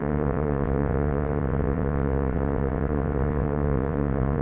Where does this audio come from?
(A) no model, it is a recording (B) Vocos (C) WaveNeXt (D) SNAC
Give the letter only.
C